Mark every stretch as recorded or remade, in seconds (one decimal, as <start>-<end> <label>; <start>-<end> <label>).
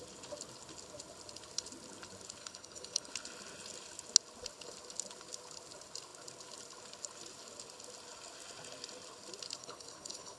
0.0-2.4 recorded; 2.4-3.1 remade; 3.1-9.6 recorded; 9.6-10.4 remade